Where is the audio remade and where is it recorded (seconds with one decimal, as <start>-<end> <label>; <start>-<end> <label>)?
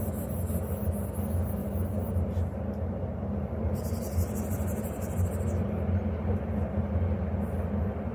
0.0-8.1 recorded